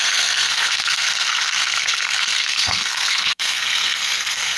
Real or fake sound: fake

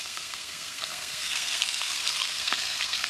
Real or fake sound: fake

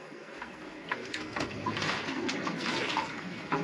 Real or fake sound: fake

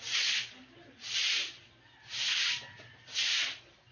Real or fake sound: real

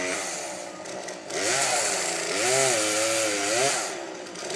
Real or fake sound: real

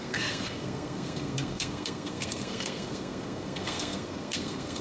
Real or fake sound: fake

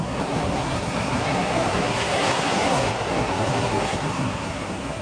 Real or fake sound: fake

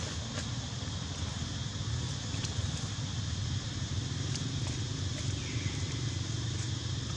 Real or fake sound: real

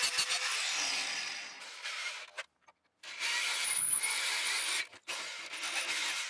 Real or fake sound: real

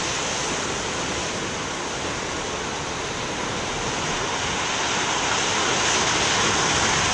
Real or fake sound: real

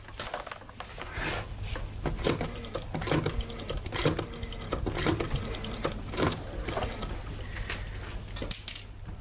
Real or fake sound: real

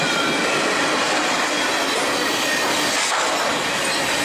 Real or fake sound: real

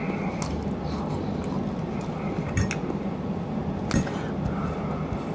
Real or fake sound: real